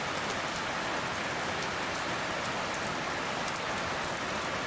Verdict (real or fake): real